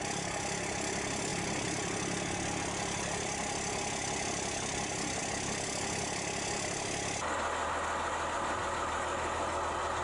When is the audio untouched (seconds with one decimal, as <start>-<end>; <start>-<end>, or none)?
0.0-10.0